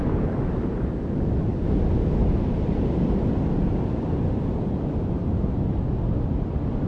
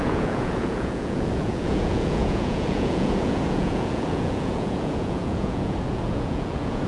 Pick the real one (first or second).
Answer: first